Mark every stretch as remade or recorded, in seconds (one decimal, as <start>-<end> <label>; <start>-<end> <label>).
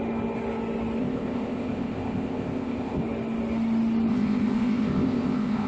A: 0.0-1.0 recorded; 1.0-3.0 remade; 3.0-4.1 recorded; 4.1-5.7 remade